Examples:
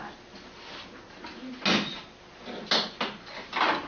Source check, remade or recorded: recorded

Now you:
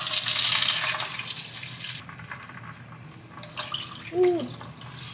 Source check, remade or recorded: recorded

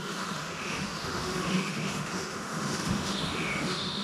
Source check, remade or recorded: remade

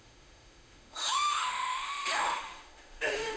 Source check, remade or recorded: remade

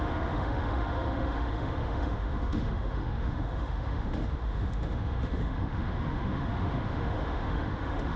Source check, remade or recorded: remade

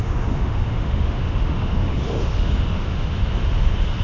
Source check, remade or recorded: remade